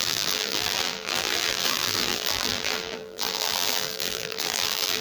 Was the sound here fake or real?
fake